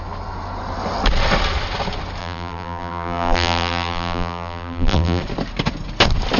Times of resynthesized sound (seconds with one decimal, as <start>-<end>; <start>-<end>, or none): 2.2-5.2